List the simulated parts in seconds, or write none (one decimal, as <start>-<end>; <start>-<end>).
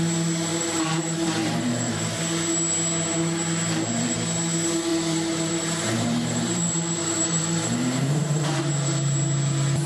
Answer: 0.5-2.2; 4.9-8.6